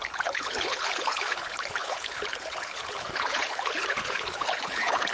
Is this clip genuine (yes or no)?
no